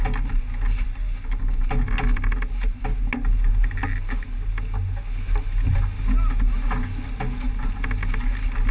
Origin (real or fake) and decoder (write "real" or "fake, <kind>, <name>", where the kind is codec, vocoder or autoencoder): real